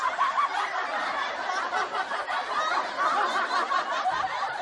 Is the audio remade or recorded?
recorded